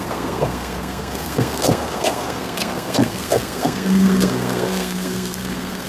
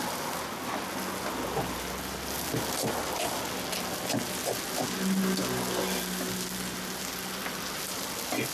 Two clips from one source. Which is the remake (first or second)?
first